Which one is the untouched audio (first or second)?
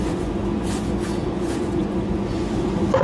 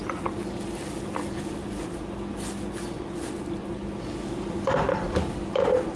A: second